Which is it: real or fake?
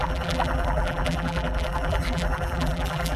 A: fake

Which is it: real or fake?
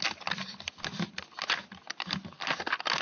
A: real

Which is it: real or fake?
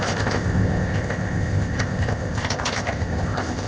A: fake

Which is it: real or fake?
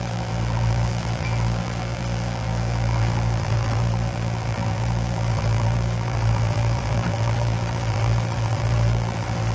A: fake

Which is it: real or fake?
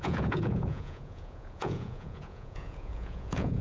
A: fake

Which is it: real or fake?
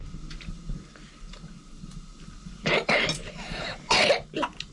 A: real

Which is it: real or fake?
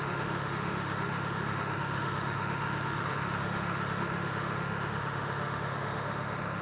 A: fake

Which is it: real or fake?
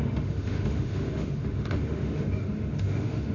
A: fake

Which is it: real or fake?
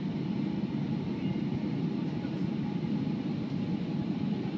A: real